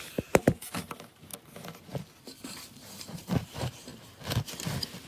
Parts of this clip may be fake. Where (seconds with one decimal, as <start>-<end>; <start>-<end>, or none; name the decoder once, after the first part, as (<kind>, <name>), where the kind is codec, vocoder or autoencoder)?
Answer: 0.0-1.3 (vocoder, BigVGAN v2); 3.0-3.9